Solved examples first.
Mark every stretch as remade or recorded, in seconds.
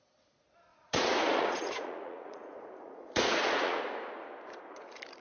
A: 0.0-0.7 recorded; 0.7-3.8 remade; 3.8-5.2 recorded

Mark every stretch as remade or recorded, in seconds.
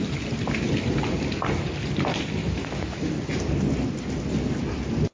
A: 0.0-2.4 recorded; 2.4-3.1 remade; 3.1-5.1 recorded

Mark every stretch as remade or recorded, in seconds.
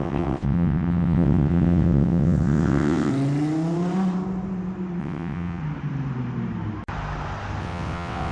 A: 0.0-3.1 remade; 3.1-5.0 recorded; 5.0-5.6 remade; 5.6-7.6 recorded; 7.6-8.3 remade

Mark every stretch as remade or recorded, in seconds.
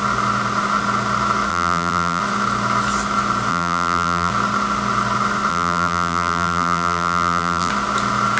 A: 0.0-1.5 recorded; 1.5-2.2 remade; 2.2-3.5 recorded; 3.5-4.3 remade; 4.3-5.5 recorded; 5.5-7.7 remade; 7.7-8.4 recorded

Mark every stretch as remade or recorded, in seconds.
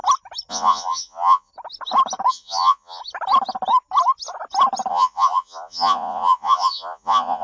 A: 0.0-0.5 recorded; 0.5-1.5 remade; 1.5-2.3 recorded; 2.3-3.0 remade; 3.0-4.9 recorded; 4.9-7.4 remade